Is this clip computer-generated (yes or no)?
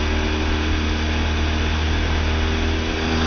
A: no